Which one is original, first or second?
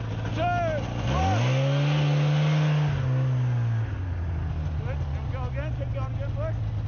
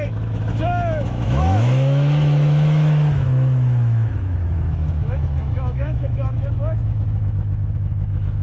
first